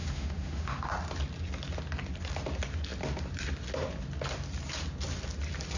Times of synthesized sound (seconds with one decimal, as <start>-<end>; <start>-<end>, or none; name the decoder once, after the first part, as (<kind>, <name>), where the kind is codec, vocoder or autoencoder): 0.0-0.9 (autoencoder, DAC-VAE)